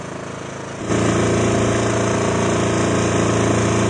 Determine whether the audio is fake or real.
real